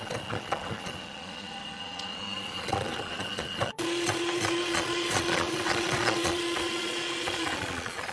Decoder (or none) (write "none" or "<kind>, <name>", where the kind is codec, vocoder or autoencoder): vocoder, Vocos